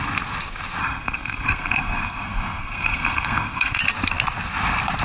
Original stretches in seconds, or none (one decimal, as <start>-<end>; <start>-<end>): 0.0-0.8; 3.8-5.0